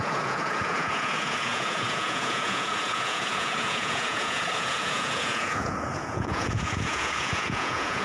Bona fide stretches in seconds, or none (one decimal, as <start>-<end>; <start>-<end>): none